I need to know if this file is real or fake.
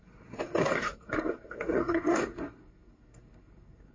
fake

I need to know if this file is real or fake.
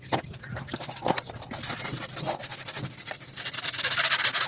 real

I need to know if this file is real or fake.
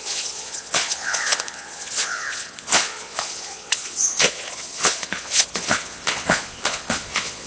fake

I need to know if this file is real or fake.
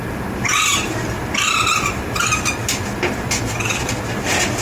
real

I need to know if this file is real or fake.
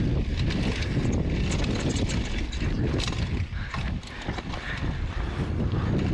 real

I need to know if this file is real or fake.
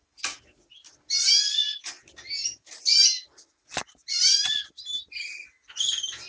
real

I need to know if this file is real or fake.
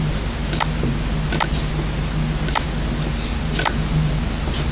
real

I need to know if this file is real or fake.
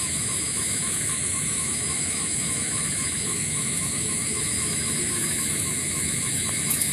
fake